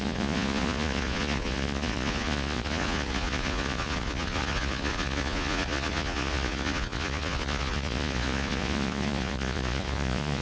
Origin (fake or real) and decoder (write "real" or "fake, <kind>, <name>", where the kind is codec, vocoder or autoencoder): fake, vocoder, Vocos